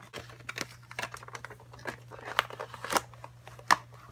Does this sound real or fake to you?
real